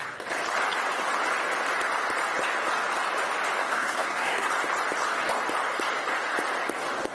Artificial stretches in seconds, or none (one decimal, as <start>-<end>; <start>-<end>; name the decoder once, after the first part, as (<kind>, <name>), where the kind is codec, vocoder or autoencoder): 3.6-4.5 (codec, SNAC)